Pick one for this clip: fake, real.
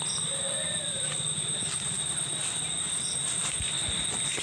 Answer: real